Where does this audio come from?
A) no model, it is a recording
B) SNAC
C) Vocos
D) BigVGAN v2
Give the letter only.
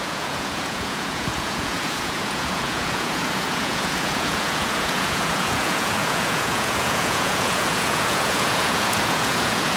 C